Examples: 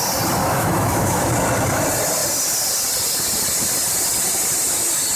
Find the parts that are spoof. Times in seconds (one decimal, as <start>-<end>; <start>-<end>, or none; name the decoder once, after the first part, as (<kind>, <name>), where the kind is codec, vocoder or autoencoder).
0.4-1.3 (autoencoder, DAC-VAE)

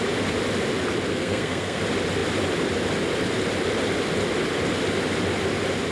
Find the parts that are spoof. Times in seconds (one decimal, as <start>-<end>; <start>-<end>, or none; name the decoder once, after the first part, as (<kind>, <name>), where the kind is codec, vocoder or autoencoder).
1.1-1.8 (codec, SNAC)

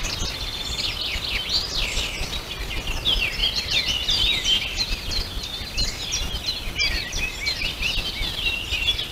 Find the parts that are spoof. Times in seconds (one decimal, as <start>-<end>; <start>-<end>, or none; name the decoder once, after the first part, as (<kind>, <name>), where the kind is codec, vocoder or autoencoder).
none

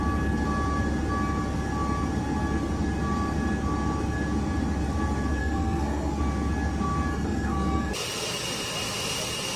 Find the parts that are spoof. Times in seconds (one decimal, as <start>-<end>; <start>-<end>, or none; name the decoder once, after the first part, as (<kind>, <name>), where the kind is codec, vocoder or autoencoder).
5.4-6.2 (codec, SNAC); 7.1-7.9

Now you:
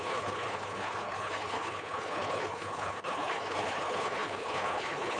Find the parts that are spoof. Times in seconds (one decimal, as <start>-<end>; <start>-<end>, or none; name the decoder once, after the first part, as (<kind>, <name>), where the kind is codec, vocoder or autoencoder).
0.0-5.2 (codec, HILCodec)

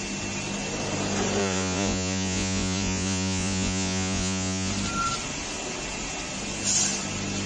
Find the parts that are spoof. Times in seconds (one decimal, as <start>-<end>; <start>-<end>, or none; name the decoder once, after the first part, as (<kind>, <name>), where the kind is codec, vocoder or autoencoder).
1.4-4.7 (vocoder, Vocos)

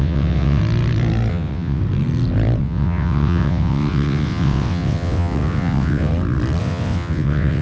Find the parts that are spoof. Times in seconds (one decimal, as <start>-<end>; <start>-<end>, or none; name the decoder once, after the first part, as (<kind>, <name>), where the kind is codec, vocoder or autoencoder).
0.0-0.6 (vocoder, WaveNeXt); 1.3-1.8; 2.6-6.1; 6.6-7.6

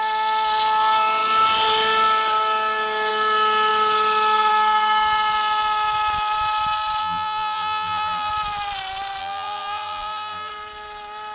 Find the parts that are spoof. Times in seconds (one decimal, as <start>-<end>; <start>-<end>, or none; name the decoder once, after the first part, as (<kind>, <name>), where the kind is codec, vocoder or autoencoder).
7.0-8.3 (vocoder, BigVGAN v2); 9.2-10.5